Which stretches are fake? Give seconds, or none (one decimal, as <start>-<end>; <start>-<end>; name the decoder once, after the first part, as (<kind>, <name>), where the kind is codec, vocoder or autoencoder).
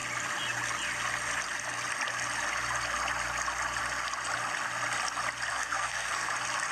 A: 5.5-6.3 (codec, SNAC)